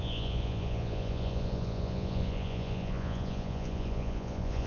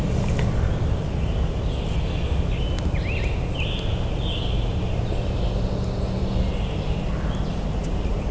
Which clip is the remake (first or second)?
first